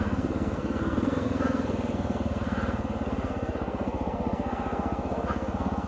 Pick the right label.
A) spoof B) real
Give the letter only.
A